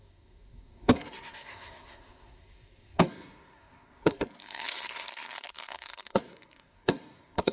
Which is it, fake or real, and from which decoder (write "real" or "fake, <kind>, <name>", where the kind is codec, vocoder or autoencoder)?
fake, codec, SNAC